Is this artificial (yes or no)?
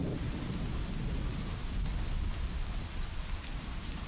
no